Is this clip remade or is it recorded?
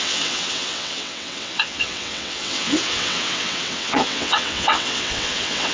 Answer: remade